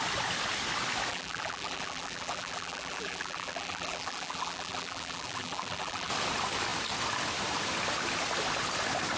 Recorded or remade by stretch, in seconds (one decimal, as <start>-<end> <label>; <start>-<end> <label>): 0.0-1.1 recorded; 1.1-6.1 remade; 6.1-9.2 recorded